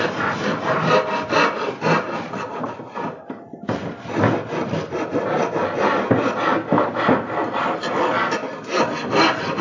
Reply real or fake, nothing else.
real